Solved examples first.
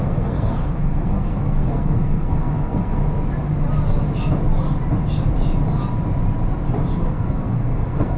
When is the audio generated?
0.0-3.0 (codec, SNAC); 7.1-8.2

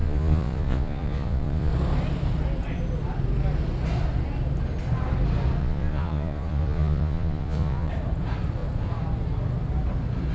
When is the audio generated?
0.0-1.7 (vocoder, Vocos); 5.6-7.9

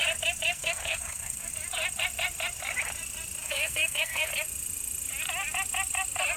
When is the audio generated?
0.5-1.5 (codec, SNAC); 3.4-4.3

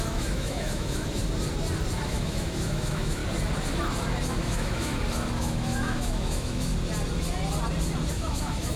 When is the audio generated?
0.0-1.2 (autoencoder, DAC-VAE); 2.0-3.2; 4.4-4.9; 5.4-6.7; 8.1-8.8

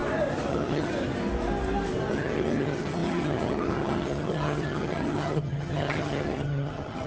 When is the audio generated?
0.5-0.9 (vocoder, HiFi-GAN); 2.1-7.1

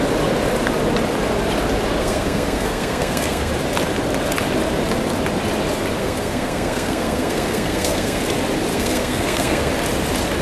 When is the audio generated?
2.0-3.5 (codec, SNAC); 6.0-8.2; 8.7-9.7

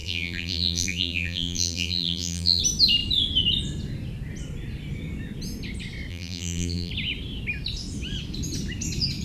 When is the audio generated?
0.0-2.6 (vocoder, BigVGAN v2); 6.1-6.9